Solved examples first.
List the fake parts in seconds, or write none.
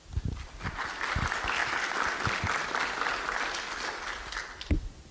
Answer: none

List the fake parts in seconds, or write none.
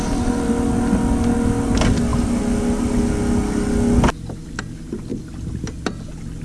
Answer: none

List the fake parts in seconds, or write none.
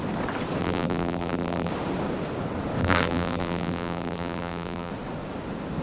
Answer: 0.6-1.7 (vocoder, BigVGAN v2); 2.8-4.9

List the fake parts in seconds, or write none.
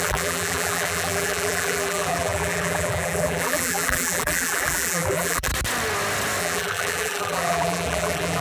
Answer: 0.0-5.5 (vocoder, BigVGAN v2); 6.4-8.4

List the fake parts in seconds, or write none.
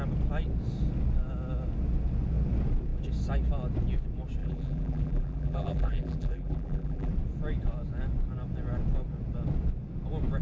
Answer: 4.4-7.1 (vocoder, BigVGAN v2)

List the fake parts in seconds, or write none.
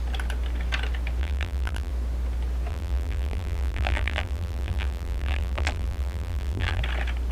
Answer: 1.2-1.9 (vocoder, BigVGAN v2); 2.7-6.8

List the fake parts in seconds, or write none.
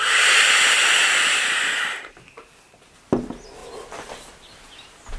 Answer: 3.6-5.2 (vocoder, BigVGAN v2)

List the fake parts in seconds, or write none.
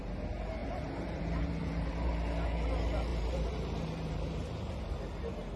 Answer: 0.6-1.2 (vocoder, BigVGAN v2); 1.6-2.1; 3.1-4.8